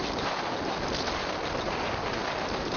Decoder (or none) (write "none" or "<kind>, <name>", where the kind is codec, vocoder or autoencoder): none